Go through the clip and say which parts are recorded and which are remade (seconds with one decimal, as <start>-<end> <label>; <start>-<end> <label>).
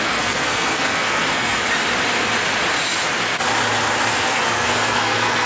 0.0-1.6 remade; 1.6-4.1 recorded; 4.1-5.5 remade